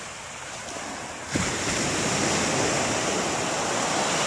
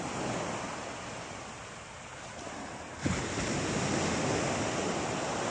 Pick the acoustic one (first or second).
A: second